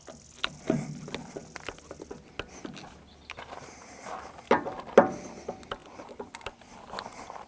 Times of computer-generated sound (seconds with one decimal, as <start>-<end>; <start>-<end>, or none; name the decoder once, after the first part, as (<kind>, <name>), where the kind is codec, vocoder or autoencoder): none